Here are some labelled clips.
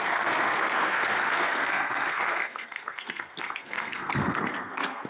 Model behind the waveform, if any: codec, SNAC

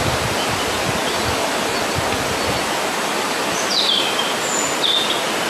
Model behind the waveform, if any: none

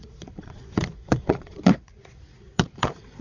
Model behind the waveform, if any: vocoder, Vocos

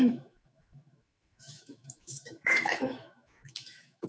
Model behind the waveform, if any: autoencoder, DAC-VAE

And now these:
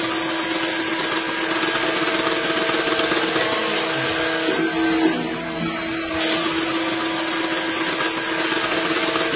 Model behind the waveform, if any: none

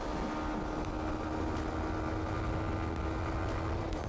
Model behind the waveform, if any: none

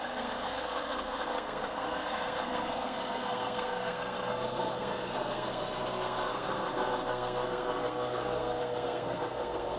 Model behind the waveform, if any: codec, SNAC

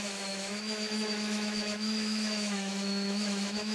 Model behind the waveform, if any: autoencoder, DAC-VAE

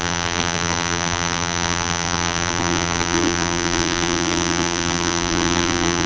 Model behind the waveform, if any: vocoder, BigVGAN v2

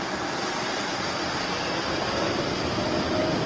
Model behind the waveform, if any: none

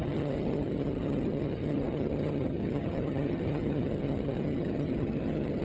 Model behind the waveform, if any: vocoder, HiFi-GAN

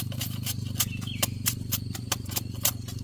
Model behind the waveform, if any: none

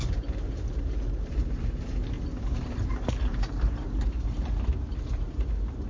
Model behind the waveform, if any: vocoder, BigVGAN v2